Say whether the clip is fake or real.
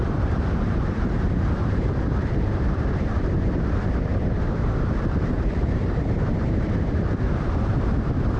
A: fake